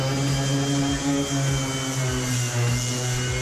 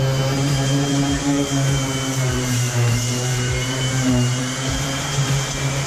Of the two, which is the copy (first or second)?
second